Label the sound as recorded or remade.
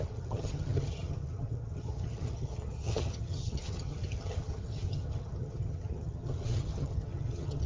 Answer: remade